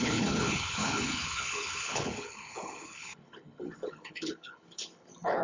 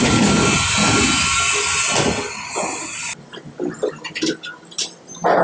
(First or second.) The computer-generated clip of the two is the first